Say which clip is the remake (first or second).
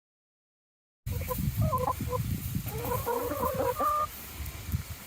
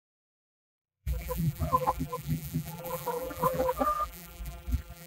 second